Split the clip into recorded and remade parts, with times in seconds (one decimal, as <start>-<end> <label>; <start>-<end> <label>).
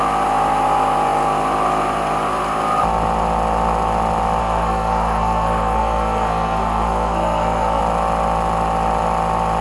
0.0-4.4 recorded; 4.4-7.8 remade; 7.8-9.6 recorded